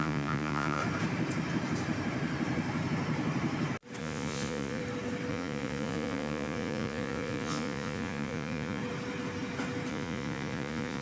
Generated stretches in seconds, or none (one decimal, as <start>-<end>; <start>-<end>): 0.0-0.8; 4.0-4.8; 5.3-8.8; 9.9-11.0